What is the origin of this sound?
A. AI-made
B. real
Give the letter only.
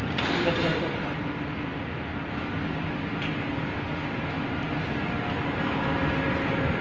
B